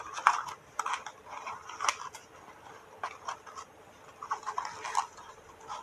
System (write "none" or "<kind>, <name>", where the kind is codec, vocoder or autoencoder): none